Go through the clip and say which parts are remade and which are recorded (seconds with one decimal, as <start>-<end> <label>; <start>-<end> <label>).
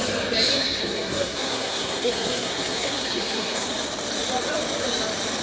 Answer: 0.0-0.5 recorded; 0.5-3.7 remade; 3.7-5.4 recorded